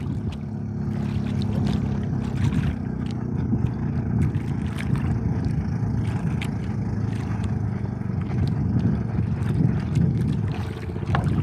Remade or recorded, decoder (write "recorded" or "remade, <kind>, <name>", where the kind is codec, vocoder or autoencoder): recorded